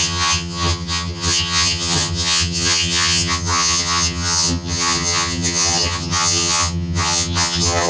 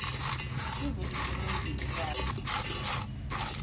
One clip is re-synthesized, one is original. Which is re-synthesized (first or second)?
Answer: first